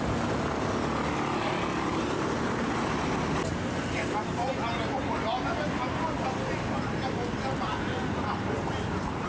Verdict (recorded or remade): recorded